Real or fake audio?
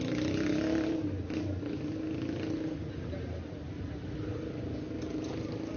real